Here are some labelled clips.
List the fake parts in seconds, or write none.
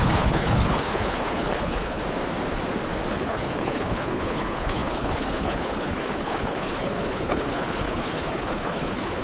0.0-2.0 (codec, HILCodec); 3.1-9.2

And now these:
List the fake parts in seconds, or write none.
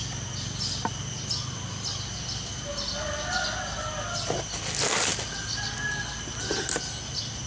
none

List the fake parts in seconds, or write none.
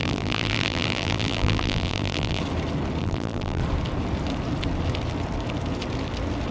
0.0-2.4 (vocoder, BigVGAN v2); 3.0-3.6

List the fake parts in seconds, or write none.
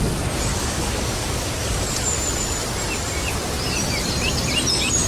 0.5-1.8 (codec, DAC)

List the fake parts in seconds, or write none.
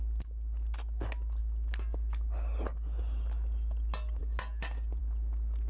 none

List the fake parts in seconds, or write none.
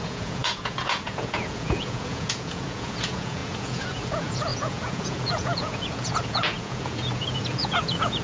0.0-8.2 (vocoder, Vocos)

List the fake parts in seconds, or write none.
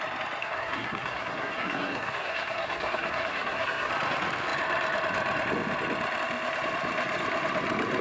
0.4-3.9 (codec, SNAC)